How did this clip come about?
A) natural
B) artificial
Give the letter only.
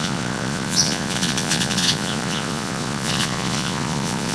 B